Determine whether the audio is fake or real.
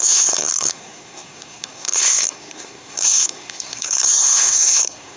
fake